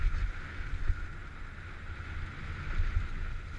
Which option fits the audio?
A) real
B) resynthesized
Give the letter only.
A